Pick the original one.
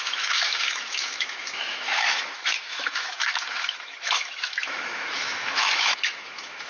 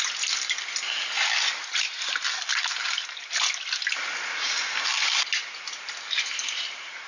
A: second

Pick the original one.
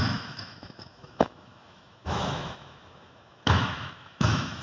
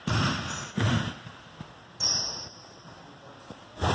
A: second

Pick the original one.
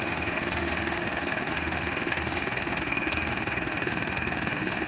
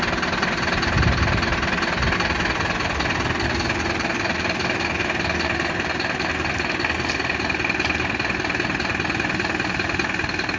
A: second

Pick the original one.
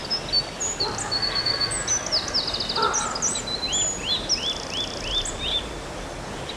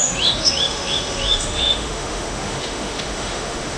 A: first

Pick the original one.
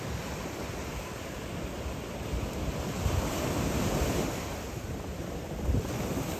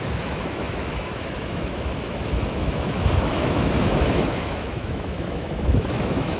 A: first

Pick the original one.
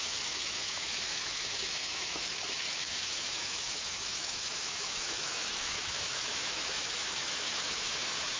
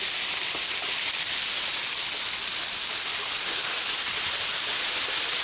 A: second